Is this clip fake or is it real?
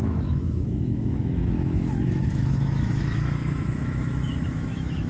fake